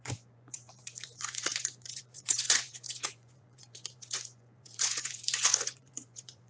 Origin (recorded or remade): remade